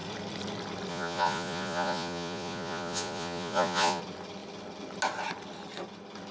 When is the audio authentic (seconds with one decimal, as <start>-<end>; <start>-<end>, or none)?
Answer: 0.0-0.9; 4.0-6.3